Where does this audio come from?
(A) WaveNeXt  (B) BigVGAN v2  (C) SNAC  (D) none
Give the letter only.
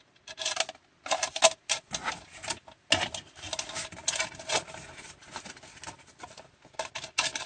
D